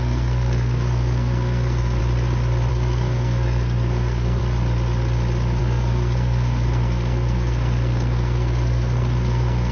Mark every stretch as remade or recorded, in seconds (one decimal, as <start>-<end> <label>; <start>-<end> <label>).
0.0-2.0 remade; 2.0-2.7 recorded; 2.7-4.4 remade; 4.4-5.6 recorded; 5.6-9.7 remade